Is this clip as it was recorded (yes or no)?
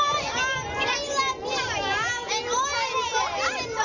yes